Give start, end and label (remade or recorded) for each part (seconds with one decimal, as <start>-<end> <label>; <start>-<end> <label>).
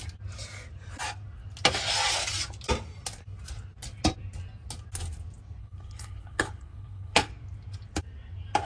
0.0-5.6 recorded; 5.6-7.3 remade; 7.3-8.7 recorded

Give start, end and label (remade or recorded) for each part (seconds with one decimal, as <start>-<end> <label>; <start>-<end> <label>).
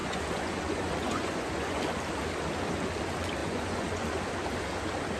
0.0-1.8 remade; 1.8-3.4 recorded; 3.4-4.2 remade; 4.2-5.2 recorded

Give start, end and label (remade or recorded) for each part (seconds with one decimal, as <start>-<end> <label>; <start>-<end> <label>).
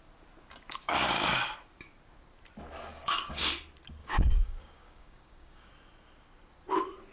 0.0-0.8 recorded; 0.8-1.3 remade; 1.3-2.9 recorded; 2.9-3.5 remade; 3.5-4.0 recorded; 4.0-5.7 remade; 5.7-7.1 recorded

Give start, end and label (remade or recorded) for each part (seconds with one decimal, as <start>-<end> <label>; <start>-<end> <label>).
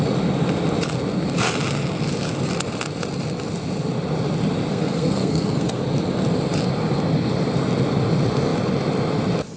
0.0-4.7 recorded; 4.7-5.8 remade; 5.8-9.6 recorded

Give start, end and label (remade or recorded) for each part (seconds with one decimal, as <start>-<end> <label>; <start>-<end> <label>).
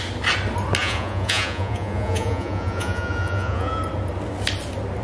0.0-0.8 recorded; 0.8-3.8 remade; 3.8-5.0 recorded